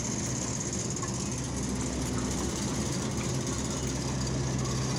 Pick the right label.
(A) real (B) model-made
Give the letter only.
A